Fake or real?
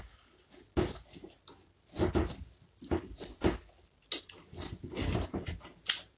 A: real